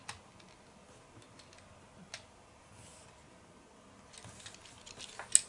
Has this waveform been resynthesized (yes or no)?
no